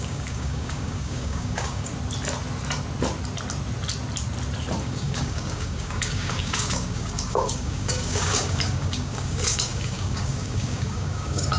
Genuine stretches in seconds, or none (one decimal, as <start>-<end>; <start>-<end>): 1.9-4.8